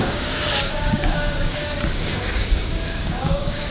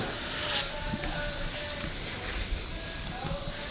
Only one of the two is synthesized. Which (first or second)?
first